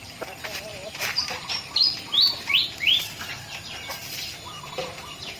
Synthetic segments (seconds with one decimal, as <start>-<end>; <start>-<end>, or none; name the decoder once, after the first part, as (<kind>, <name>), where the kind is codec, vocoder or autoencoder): 0.0-5.4 (vocoder, BigVGAN v2)